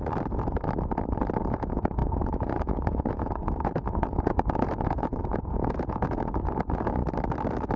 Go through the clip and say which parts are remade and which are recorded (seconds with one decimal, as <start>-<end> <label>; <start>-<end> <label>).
0.0-1.5 recorded; 1.5-7.0 remade; 7.0-7.8 recorded